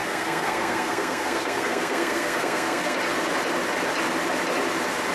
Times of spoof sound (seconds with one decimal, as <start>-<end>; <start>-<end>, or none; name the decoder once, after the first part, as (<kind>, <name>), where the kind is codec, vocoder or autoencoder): 0.0-3.0 (codec, SNAC)